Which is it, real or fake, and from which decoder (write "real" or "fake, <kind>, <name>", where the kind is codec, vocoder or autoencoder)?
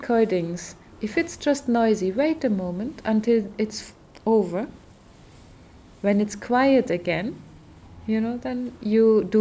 real